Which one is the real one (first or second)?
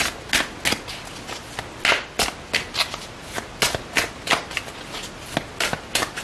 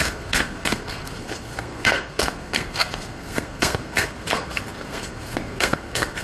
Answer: first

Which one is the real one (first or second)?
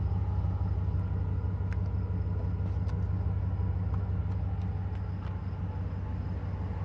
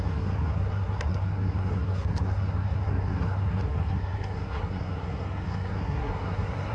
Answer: first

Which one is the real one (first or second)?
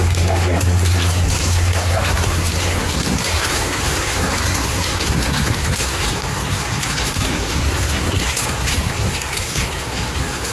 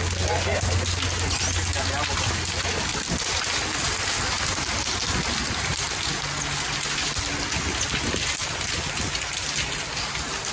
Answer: second